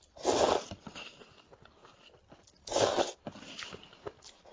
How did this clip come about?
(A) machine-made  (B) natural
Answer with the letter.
B